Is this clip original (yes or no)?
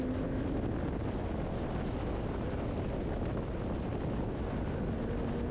yes